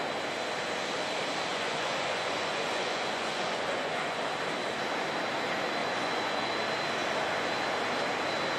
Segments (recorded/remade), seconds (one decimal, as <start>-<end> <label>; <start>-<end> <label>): 0.0-1.5 recorded; 1.5-4.3 remade; 4.3-5.8 recorded; 5.8-6.5 remade; 6.5-8.6 recorded